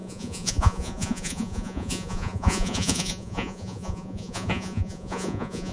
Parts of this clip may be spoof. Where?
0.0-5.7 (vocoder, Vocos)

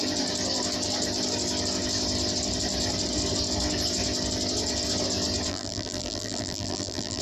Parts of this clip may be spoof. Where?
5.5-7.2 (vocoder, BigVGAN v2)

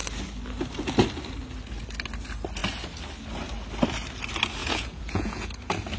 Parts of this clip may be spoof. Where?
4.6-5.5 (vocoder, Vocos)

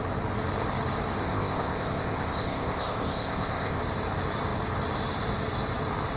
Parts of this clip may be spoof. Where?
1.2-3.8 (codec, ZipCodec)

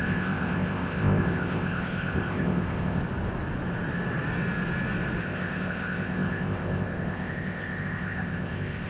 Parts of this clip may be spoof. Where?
0.0-3.0 (codec, ZipCodec); 5.2-8.9